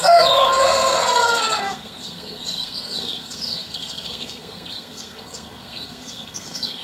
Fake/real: fake